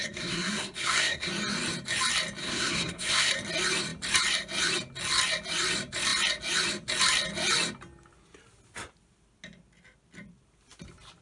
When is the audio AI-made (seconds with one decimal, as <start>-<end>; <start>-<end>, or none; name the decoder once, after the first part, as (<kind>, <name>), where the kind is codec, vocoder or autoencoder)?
0.0-1.3 (codec, SNAC); 2.4-3.3